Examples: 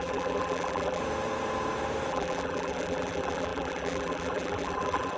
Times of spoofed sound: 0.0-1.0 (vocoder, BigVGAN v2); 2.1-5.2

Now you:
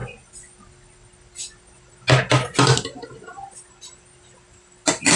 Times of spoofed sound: none

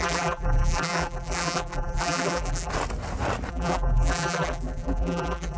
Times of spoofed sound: 0.0-2.7 (vocoder, BigVGAN v2); 3.5-5.6

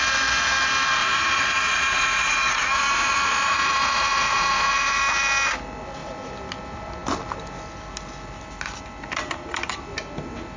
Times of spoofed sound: 1.0-5.0 (vocoder, Vocos)

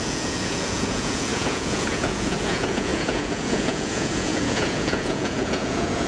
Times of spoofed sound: 0.0-6.1 (vocoder, Vocos)

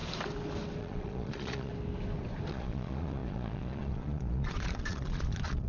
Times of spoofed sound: 0.8-1.7 (vocoder, Vocos); 2.5-5.7

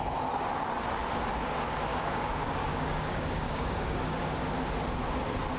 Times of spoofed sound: 1.9-4.4 (codec, DAC)

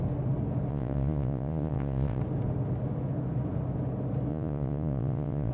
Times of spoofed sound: 0.7-2.2 (vocoder, Vocos); 4.3-5.5